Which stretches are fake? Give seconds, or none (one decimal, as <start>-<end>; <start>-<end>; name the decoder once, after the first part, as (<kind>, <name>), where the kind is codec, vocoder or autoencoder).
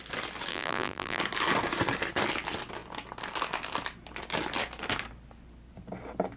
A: 0.5-1.2 (vocoder, BigVGAN v2)